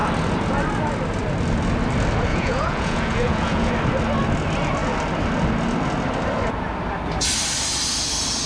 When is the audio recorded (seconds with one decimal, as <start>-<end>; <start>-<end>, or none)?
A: 0.0-2.3; 3.7-8.5